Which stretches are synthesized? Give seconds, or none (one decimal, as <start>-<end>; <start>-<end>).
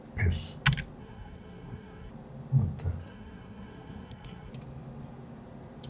1.0-2.1; 3.0-4.5